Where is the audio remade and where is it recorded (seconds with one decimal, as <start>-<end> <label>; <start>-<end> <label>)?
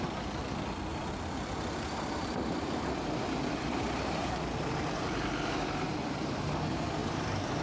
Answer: 0.0-0.9 recorded; 0.9-5.5 remade; 5.5-7.0 recorded; 7.0-7.6 remade